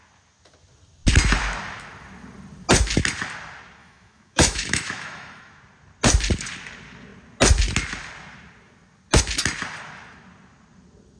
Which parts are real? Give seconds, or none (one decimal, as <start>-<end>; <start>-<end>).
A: 0.0-3.8; 5.6-11.2